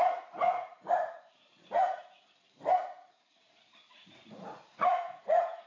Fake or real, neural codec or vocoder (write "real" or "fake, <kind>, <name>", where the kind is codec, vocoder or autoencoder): fake, vocoder, Vocos